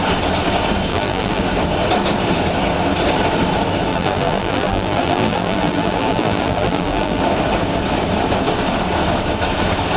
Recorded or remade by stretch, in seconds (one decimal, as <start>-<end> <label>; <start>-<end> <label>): 0.0-0.9 recorded; 0.9-1.4 remade; 1.4-3.9 recorded; 3.9-7.2 remade; 7.2-10.0 recorded